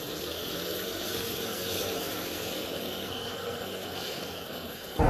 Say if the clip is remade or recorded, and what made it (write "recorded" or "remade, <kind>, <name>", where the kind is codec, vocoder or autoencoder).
remade, codec, SNAC